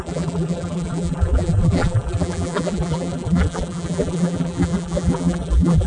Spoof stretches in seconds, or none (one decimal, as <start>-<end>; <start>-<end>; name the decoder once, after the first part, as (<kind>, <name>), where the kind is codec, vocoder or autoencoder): 0.0-5.9 (vocoder, BigVGAN v2)